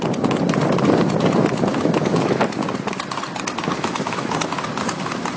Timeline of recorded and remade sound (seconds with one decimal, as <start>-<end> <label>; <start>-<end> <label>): 0.0-1.7 recorded; 1.7-2.4 remade; 2.4-3.7 recorded; 3.7-4.4 remade; 4.4-5.4 recorded